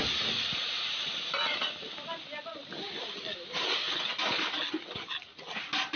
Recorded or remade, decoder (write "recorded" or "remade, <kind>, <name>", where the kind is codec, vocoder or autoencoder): recorded